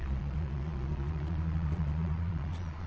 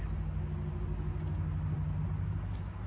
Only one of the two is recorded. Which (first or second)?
second